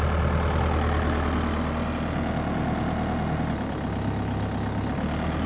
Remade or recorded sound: recorded